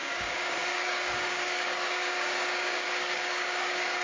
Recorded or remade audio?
remade